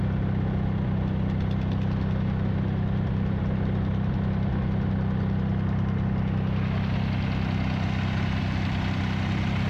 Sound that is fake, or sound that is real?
real